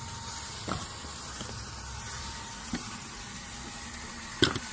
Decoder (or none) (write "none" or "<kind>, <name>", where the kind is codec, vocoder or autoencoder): none